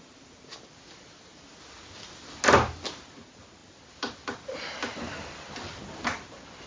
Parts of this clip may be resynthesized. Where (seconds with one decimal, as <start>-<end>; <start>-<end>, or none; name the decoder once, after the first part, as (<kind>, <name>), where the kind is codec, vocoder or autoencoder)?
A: none

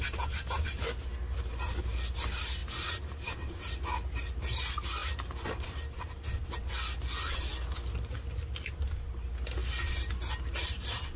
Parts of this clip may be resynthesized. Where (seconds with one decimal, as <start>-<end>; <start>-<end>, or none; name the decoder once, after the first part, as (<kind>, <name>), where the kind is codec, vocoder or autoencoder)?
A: none

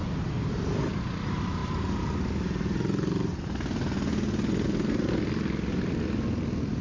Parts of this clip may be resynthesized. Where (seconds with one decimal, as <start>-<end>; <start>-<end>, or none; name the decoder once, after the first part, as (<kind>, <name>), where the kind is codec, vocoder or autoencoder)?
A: none

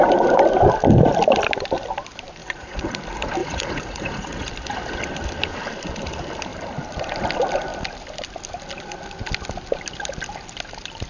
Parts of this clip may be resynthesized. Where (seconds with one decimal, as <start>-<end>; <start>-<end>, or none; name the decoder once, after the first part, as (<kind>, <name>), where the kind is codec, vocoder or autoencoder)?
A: 2.4-3.0 (vocoder, Vocos); 3.4-4.5

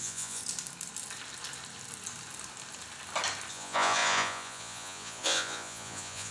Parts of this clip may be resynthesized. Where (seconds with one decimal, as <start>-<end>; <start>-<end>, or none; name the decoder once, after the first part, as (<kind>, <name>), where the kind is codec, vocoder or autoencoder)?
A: 0.0-0.4 (vocoder, Vocos); 3.5-6.3

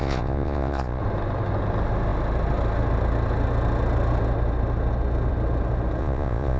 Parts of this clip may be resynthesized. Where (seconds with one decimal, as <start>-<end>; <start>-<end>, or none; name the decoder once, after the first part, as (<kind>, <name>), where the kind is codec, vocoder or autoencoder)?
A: 0.0-1.0 (vocoder, Vocos); 6.0-6.6

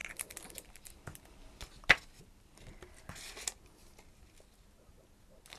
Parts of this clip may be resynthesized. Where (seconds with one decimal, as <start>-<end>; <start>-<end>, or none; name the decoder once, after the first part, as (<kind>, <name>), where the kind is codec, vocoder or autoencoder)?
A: none